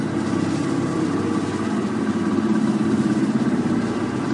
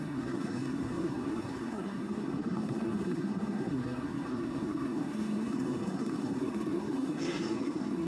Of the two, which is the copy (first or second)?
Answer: second